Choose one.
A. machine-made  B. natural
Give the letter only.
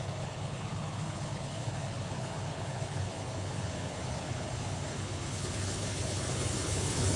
A